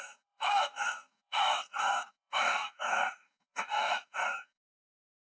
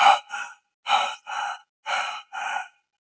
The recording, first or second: second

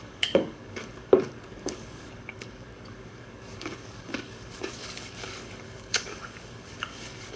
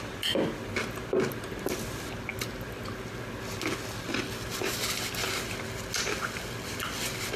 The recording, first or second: second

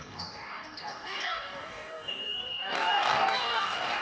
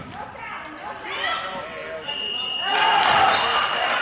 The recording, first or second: second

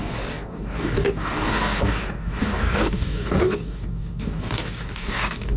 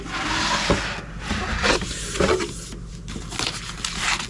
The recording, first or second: second